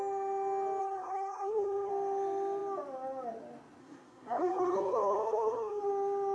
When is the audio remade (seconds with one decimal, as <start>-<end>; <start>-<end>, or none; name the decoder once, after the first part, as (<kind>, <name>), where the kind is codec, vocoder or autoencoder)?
0.8-1.9 (codec, SNAC); 3.8-5.8